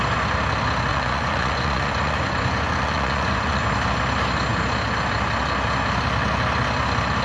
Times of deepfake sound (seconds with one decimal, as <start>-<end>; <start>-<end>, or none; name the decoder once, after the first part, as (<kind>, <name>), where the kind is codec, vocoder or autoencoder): 0.9-3.6 (vocoder, Vocos)